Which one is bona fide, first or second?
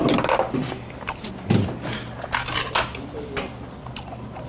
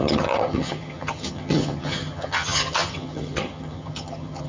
first